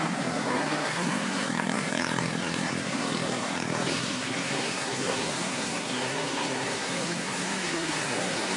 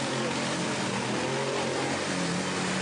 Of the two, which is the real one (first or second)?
second